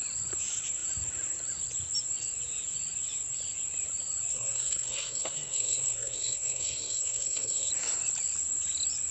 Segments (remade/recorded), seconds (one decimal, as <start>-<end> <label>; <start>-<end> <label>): 0.0-4.3 recorded; 4.3-7.7 remade; 7.7-9.1 recorded